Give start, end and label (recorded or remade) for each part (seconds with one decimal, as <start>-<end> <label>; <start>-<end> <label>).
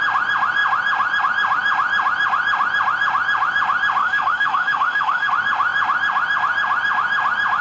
0.0-4.0 recorded; 4.0-5.3 remade; 5.3-7.6 recorded